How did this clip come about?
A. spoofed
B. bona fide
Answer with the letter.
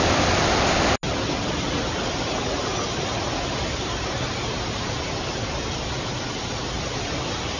B